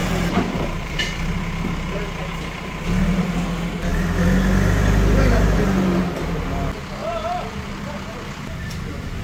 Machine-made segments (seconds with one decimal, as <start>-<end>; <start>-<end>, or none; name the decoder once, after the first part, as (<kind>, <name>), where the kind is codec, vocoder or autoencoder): 0.0-1.0 (vocoder, BigVGAN v2); 7.0-8.1